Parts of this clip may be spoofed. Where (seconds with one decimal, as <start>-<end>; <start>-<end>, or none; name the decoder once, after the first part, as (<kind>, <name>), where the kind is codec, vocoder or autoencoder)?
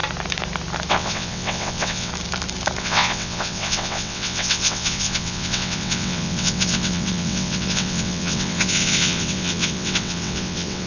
0.9-2.1 (vocoder, WaveNeXt); 2.8-10.9